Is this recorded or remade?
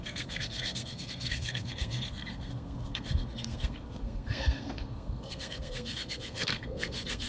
remade